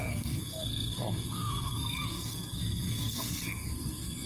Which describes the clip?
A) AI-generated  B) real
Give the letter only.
A